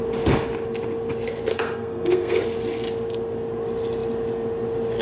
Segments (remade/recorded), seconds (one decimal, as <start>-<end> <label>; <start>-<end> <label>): 0.0-1.5 recorded; 1.5-2.4 remade; 2.4-5.0 recorded